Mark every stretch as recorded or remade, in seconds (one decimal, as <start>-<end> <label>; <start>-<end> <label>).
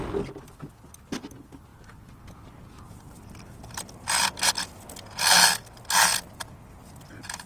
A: 0.0-1.7 recorded; 1.7-3.8 remade; 3.8-7.5 recorded